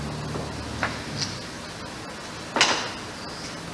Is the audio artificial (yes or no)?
no